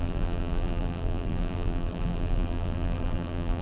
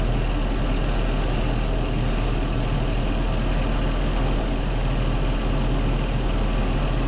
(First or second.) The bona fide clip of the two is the second